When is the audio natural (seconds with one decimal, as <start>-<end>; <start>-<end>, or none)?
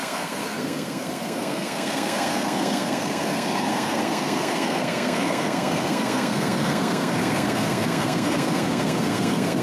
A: none